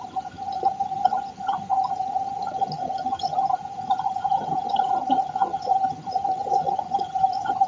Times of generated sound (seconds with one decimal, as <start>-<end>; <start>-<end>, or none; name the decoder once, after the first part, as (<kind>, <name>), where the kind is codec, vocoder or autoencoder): 0.0-7.7 (vocoder, HiFi-GAN)